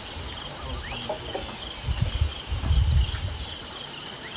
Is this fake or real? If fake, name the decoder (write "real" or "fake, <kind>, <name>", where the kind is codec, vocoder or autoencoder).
fake, vocoder, BigVGAN v2